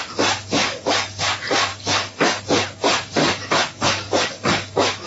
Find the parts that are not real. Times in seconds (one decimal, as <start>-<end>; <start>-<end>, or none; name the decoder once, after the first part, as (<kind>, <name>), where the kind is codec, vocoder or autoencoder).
0.6-1.2 (codec, DAC); 1.7-2.4; 3.2-5.1